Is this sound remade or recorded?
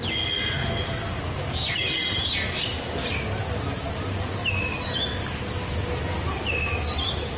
recorded